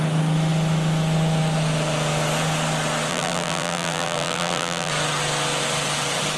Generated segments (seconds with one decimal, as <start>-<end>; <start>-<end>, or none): 3.1-4.9